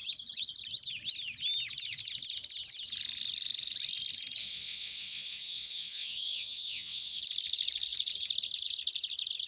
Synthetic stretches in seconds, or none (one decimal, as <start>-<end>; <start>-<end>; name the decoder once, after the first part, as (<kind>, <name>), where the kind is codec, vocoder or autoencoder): 4.4-7.2 (vocoder, WaveNeXt)